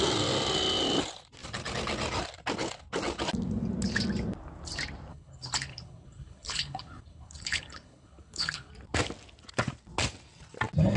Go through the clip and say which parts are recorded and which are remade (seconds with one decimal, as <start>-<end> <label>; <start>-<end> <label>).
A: 0.0-5.1 recorded; 5.1-8.7 remade; 8.7-11.0 recorded